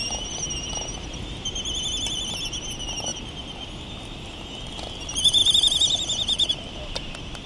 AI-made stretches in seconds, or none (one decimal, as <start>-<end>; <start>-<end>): none